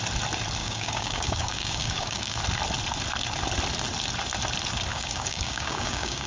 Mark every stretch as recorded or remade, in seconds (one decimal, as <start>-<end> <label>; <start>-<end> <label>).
0.0-0.6 recorded; 0.6-2.4 remade; 2.4-4.9 recorded; 4.9-6.3 remade